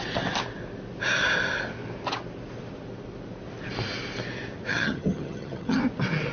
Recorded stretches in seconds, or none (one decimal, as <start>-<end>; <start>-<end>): 0.0-4.7; 5.8-6.3